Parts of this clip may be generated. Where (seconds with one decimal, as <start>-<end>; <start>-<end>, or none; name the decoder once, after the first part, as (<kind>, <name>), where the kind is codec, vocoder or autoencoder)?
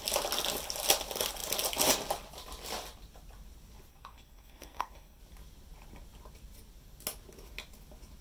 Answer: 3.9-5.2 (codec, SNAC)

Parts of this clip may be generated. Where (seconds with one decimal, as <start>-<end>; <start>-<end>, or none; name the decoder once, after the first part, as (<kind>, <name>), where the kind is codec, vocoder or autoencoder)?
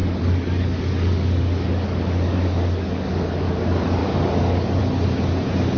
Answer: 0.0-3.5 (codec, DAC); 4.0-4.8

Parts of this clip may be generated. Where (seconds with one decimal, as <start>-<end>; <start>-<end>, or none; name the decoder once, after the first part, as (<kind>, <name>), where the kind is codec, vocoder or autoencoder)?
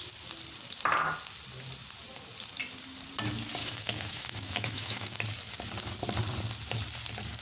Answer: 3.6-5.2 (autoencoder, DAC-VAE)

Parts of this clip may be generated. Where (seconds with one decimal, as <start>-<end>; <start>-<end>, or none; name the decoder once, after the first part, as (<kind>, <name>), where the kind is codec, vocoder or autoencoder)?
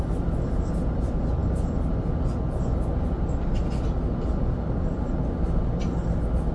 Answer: none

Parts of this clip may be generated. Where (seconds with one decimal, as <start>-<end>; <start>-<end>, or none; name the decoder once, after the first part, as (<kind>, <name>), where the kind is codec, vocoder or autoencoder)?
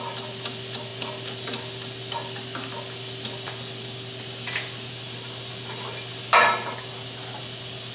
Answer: none